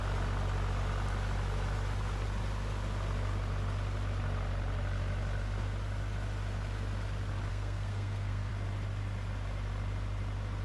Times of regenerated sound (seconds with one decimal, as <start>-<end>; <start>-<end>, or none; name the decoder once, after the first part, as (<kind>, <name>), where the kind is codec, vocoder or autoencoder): 7.5-8.5 (codec, SNAC)